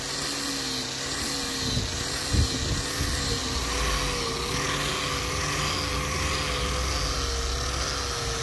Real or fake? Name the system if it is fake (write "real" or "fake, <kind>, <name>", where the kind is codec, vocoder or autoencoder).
real